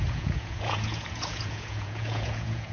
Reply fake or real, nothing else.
fake